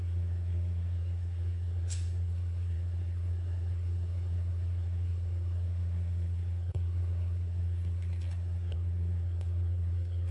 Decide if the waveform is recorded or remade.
remade